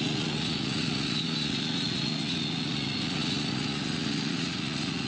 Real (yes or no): no